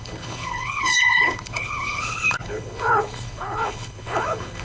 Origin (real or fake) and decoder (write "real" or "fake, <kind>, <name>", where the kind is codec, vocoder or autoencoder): fake, codec, HILCodec